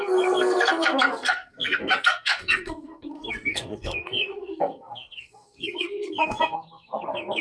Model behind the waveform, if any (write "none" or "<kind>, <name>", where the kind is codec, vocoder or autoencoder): codec, SNAC